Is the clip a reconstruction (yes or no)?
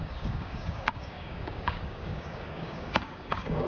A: yes